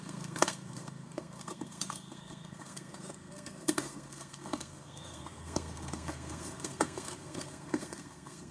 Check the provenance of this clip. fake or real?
fake